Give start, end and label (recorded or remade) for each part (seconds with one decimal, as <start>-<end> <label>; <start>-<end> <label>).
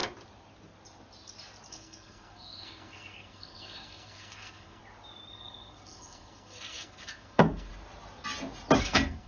0.0-1.7 recorded; 1.7-4.8 remade; 4.8-5.3 recorded; 5.3-7.7 remade; 7.7-8.8 recorded; 8.8-9.3 remade